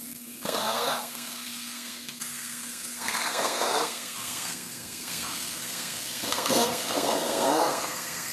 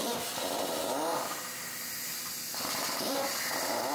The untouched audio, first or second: second